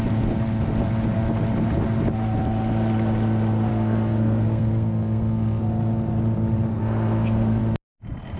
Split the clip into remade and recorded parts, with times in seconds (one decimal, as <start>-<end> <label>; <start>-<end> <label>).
0.0-3.7 recorded; 3.7-5.6 remade; 5.6-6.7 recorded; 6.7-7.6 remade; 7.6-8.4 recorded